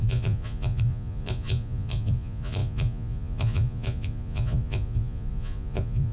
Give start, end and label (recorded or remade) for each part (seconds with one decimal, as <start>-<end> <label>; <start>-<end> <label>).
0.0-6.1 remade